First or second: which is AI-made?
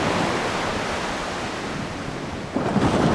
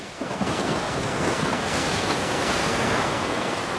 second